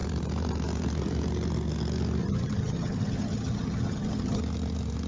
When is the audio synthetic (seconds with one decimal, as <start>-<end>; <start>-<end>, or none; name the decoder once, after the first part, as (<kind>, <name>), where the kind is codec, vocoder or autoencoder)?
2.2-4.4 (vocoder, HiFi-GAN)